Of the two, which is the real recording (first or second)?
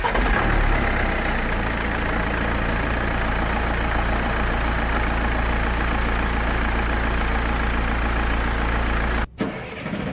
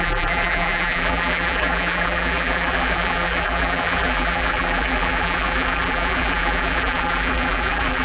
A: first